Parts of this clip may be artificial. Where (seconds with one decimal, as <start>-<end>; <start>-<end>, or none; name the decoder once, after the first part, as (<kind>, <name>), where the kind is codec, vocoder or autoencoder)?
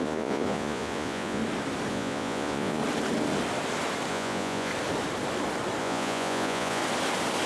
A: 0.0-1.4 (vocoder, Vocos); 1.9-2.8; 4.1-4.7; 5.8-6.8